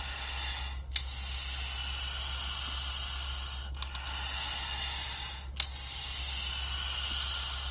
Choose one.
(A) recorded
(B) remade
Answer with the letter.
A